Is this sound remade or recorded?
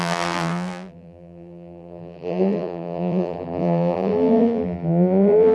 remade